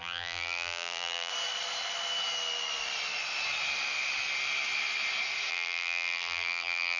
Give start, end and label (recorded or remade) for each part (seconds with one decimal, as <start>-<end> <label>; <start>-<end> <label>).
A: 0.0-1.3 remade; 1.3-5.5 recorded; 5.5-7.0 remade